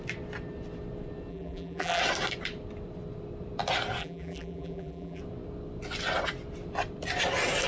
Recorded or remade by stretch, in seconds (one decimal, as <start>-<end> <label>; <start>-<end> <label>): 0.0-1.3 recorded; 1.3-2.0 remade; 2.0-4.0 recorded; 4.0-5.2 remade; 5.2-7.7 recorded